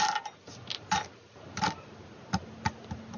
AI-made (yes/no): no